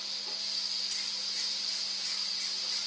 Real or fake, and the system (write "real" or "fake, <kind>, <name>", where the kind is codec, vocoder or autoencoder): real